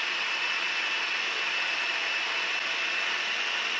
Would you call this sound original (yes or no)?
yes